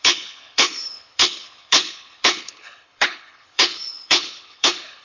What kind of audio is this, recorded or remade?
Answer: remade